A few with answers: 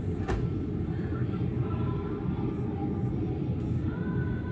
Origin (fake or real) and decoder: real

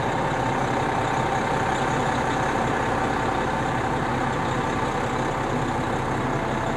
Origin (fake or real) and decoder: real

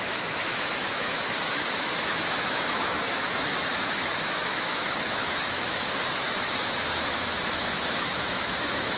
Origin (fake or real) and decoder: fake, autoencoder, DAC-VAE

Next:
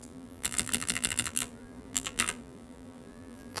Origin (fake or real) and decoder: fake, vocoder, BigVGAN v2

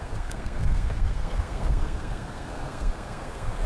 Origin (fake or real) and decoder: fake, codec, SNAC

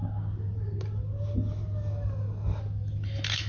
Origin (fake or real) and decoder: real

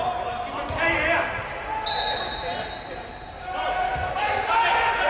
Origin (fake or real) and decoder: real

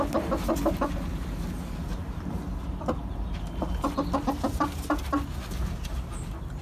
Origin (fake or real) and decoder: real